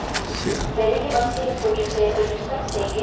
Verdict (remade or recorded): recorded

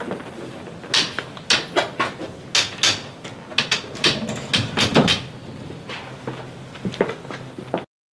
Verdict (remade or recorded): recorded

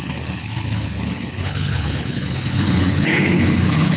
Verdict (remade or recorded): remade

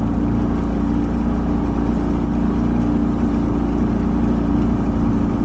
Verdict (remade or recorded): recorded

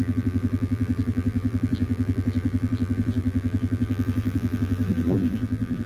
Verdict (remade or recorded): remade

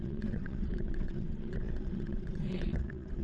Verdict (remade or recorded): remade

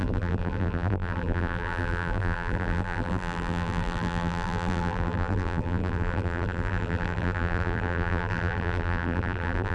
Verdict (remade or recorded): remade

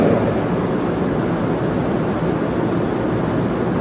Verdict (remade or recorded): recorded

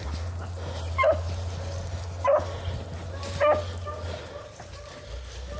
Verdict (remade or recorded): recorded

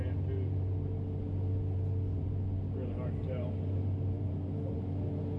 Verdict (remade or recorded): recorded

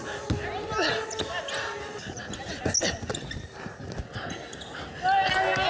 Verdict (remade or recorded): recorded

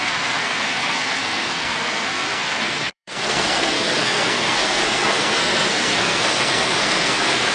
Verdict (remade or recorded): remade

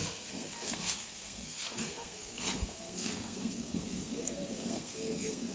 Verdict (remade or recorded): remade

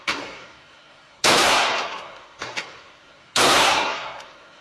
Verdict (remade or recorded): remade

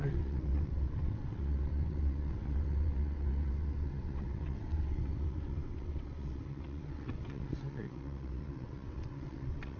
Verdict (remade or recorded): remade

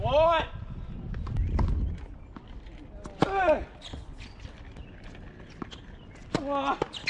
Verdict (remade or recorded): recorded